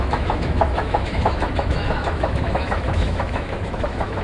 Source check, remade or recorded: remade